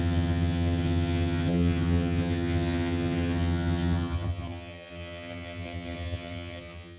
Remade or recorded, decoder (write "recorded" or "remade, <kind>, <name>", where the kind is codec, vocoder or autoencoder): remade, vocoder, HiFi-GAN